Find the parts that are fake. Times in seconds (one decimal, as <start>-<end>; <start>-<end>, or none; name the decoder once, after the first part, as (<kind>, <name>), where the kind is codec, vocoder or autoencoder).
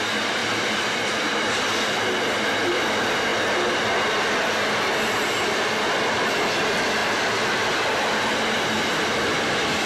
0.4-1.6 (vocoder, BigVGAN v2); 7.0-7.7